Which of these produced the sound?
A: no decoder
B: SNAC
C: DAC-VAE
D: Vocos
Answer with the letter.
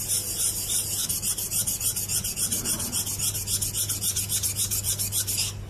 A